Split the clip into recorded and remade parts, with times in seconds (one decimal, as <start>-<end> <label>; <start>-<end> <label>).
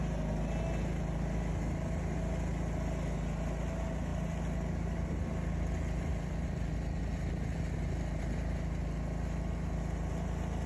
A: 0.0-10.7 recorded